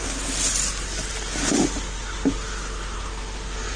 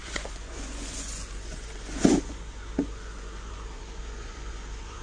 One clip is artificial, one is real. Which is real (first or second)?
first